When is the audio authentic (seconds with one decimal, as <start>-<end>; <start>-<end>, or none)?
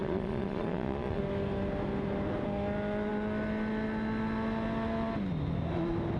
1.2-6.2